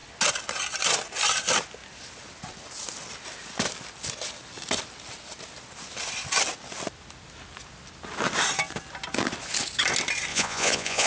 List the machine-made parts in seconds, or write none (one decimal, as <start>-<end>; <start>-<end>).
10.3-11.1